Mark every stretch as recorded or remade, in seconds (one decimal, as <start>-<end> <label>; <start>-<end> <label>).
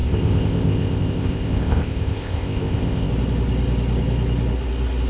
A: 0.0-3.1 remade; 3.1-5.1 recorded